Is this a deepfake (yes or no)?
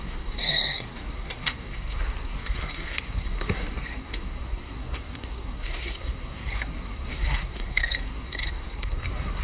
yes